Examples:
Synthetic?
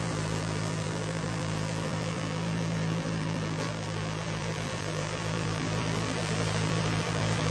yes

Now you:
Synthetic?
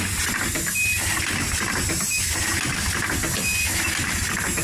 no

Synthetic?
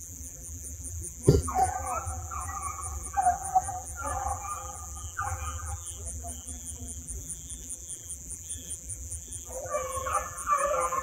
yes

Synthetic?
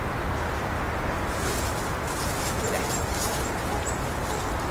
no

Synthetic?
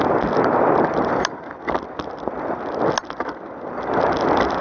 no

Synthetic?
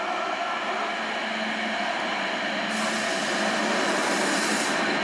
no